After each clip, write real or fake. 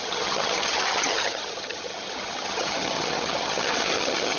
fake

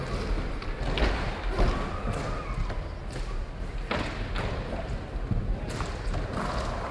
real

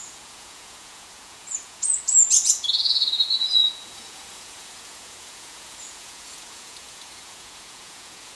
fake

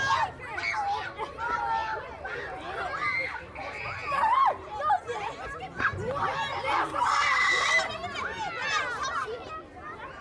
real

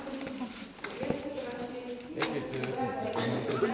real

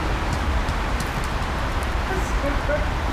real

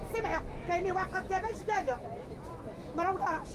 fake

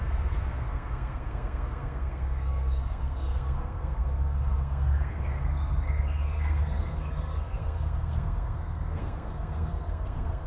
fake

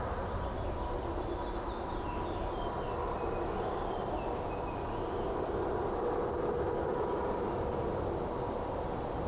real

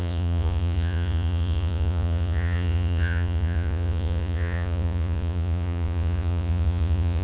fake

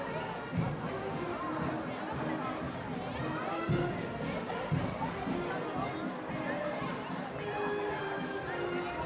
real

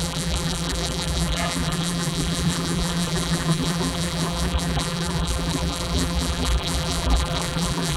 fake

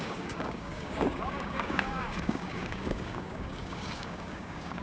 fake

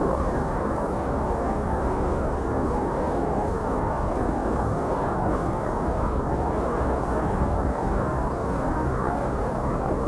fake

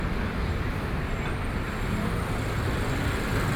real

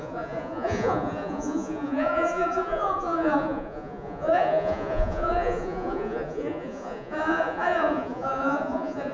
fake